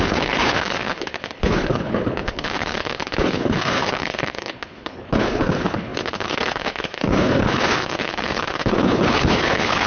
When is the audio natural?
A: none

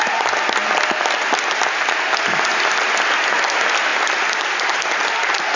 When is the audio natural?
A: 0.0-5.6